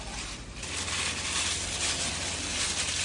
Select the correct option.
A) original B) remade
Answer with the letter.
A